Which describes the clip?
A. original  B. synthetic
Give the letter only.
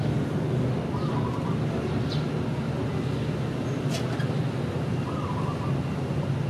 A